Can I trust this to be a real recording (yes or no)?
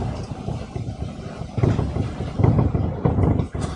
yes